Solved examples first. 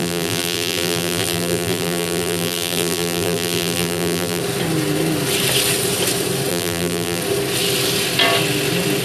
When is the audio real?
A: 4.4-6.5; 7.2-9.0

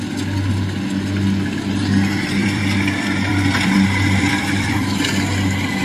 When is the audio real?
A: 0.0-2.4; 5.0-5.8

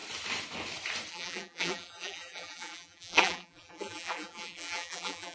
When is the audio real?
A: 0.0-1.1

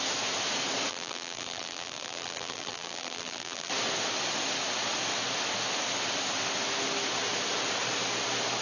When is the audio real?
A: 0.0-0.9; 3.7-8.6

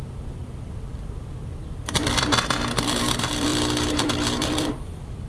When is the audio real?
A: none

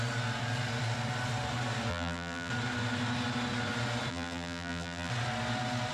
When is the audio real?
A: 0.0-1.9; 2.5-4.1; 5.1-5.9

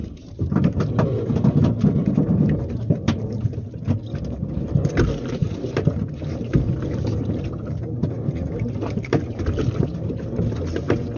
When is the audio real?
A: 0.5-2.0; 3.7-5.4; 9.6-11.2